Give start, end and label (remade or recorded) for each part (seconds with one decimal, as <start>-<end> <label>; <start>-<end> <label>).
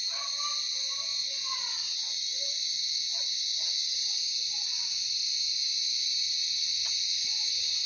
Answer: 0.0-6.4 remade; 6.4-7.2 recorded; 7.2-7.9 remade